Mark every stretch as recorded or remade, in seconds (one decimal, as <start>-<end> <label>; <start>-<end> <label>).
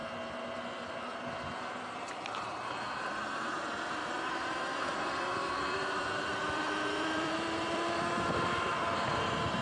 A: 0.0-2.8 recorded; 2.8-9.6 remade